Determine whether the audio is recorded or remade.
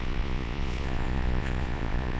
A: remade